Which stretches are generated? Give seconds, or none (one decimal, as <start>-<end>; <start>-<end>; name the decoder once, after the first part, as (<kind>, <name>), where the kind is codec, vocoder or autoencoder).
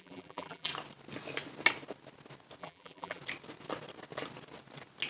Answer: 0.0-0.7 (vocoder, BigVGAN v2); 2.6-3.2